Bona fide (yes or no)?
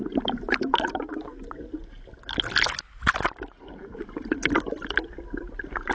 yes